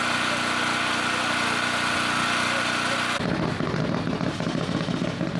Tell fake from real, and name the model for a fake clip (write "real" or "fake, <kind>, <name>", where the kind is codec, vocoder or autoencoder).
real